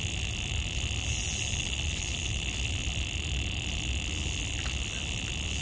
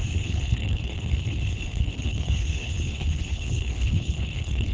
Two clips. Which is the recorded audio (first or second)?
first